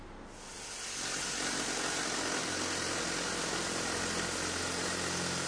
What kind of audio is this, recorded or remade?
recorded